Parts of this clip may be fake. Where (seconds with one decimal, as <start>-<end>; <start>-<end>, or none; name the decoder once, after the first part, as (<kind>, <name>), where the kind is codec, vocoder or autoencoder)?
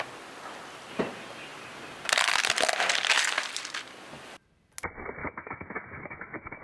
5.2-6.6 (autoencoder, DAC-VAE)